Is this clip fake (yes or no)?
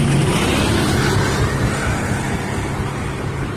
no